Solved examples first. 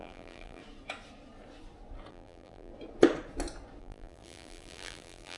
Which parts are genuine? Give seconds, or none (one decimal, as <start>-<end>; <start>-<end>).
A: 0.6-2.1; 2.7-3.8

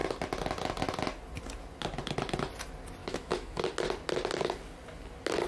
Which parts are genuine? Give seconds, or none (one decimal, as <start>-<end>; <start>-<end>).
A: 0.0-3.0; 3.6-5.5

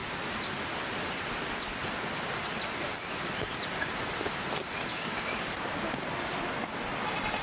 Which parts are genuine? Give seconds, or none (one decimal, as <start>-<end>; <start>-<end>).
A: 0.0-4.9; 5.5-7.4